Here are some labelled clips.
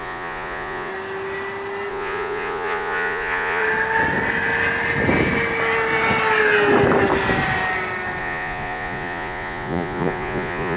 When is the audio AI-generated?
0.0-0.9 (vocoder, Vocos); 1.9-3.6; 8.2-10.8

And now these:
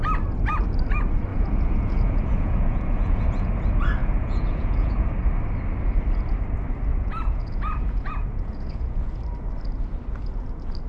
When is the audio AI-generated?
1.3-3.5 (vocoder, Vocos); 4.0-5.1; 6.9-9.0